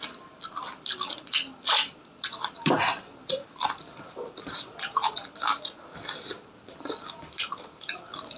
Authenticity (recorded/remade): recorded